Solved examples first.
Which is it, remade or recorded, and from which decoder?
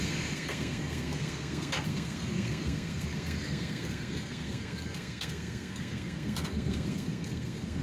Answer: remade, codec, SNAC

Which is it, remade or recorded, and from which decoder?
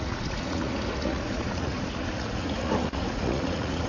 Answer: remade, vocoder, Vocos